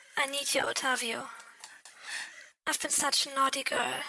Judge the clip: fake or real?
real